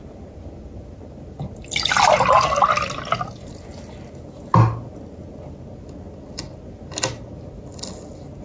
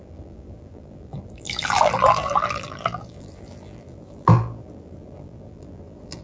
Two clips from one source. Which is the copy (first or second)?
second